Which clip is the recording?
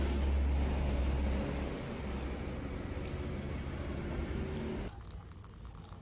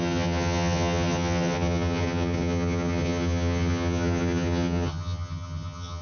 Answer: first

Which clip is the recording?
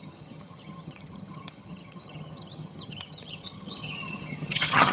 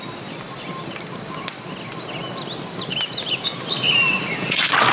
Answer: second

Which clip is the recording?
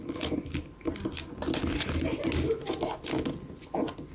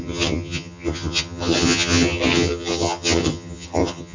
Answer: first